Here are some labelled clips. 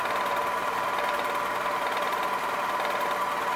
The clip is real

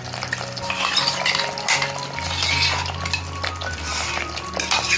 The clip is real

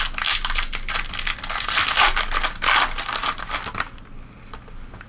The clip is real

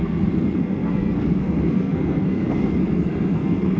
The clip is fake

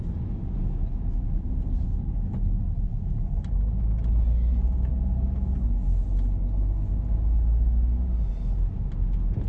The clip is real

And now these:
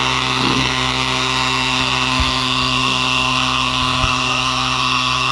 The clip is fake